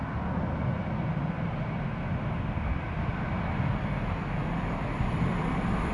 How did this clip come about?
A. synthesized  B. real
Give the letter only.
B